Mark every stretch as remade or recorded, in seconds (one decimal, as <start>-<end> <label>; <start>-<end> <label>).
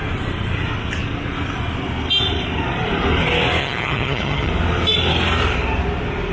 0.0-3.6 recorded; 3.6-4.5 remade; 4.5-6.3 recorded